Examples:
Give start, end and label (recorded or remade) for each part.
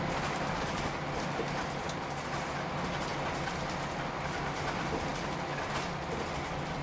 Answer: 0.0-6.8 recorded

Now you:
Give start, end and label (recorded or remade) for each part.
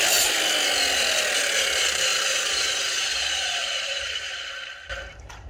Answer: 0.0-2.1 recorded; 2.1-4.5 remade; 4.5-5.5 recorded